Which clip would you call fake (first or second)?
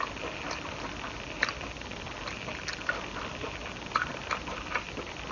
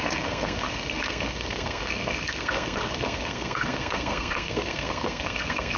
second